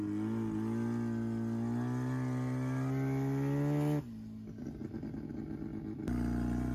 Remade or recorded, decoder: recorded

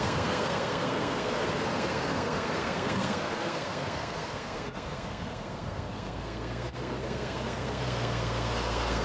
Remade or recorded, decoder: remade, codec, SNAC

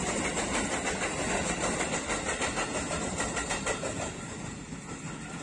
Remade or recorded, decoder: recorded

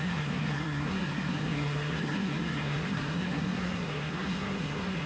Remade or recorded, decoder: remade, codec, SNAC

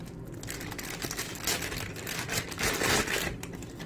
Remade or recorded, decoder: recorded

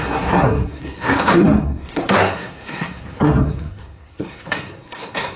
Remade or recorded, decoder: remade, codec, SNAC